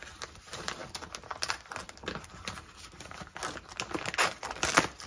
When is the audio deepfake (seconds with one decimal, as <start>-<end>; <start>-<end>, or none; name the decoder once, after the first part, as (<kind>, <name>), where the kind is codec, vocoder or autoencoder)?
none